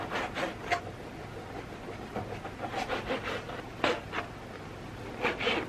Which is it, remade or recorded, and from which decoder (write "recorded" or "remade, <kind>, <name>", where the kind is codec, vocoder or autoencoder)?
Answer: recorded